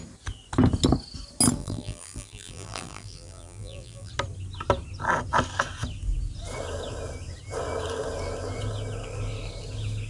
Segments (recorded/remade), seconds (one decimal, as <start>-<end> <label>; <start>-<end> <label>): 0.0-1.6 recorded; 1.6-4.1 remade; 4.1-10.1 recorded